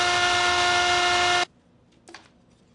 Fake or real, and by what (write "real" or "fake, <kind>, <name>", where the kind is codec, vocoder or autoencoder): real